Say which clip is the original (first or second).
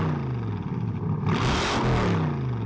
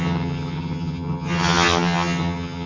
first